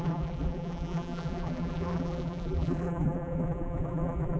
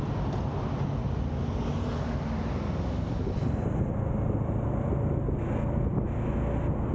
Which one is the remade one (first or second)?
first